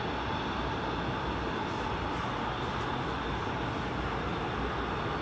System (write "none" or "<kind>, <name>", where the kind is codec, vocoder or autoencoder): none